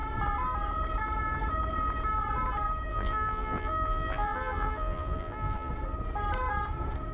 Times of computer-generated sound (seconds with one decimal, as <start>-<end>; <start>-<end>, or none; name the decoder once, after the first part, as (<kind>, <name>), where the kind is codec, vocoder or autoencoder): 2.9-5.7 (vocoder, BigVGAN v2)